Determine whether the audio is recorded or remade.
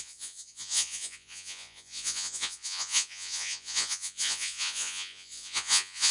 remade